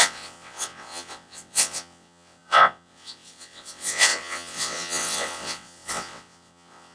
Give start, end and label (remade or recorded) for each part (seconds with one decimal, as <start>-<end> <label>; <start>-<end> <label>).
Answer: 0.0-6.9 remade